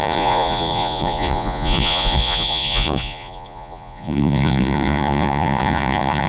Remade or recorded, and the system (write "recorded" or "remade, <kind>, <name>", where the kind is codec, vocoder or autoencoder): remade, vocoder, Vocos